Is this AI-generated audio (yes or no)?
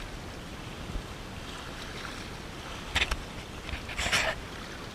no